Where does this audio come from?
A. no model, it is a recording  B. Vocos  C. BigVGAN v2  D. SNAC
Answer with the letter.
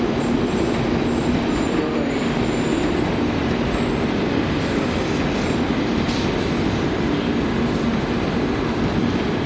A